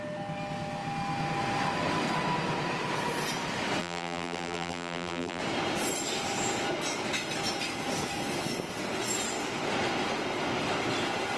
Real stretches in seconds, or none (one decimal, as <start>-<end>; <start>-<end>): 0.0-3.8; 5.4-11.4